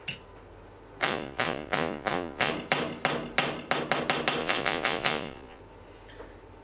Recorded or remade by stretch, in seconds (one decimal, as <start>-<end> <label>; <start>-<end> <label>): 0.0-1.0 recorded; 1.0-2.5 remade; 2.5-4.4 recorded; 4.4-5.6 remade; 5.6-6.6 recorded